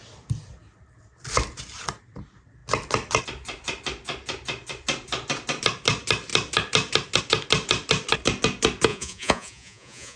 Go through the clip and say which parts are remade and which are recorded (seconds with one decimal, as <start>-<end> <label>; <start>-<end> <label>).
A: 0.0-8.9 recorded; 8.9-10.2 remade